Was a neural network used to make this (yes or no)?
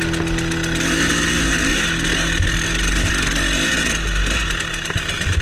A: no